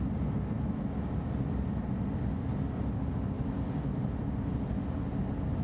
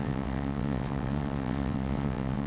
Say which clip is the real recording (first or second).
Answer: first